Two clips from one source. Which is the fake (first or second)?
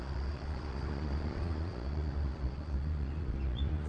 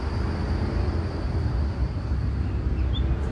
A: first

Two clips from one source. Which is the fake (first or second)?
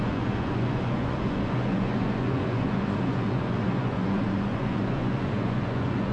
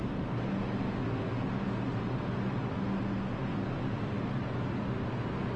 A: first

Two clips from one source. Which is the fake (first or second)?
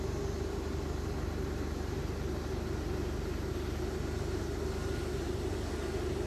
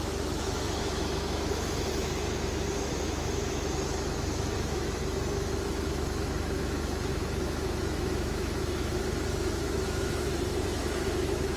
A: second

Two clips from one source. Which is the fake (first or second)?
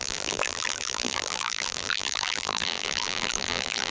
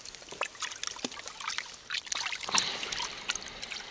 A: first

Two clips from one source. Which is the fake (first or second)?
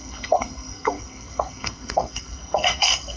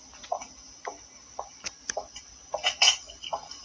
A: first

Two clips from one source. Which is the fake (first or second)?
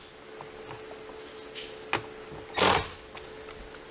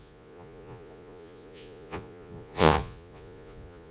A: second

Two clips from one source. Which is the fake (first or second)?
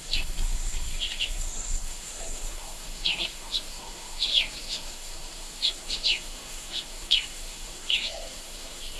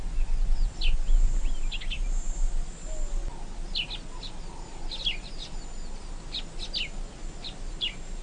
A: first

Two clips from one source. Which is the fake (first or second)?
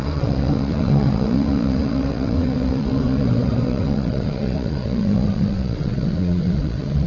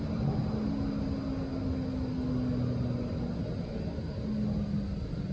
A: first